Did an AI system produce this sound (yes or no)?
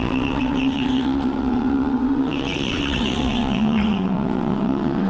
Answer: yes